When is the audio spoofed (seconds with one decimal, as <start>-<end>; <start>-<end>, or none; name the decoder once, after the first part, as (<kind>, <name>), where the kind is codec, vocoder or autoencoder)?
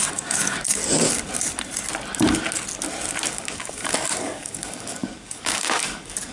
0.0-0.8 (codec, DAC); 3.3-6.3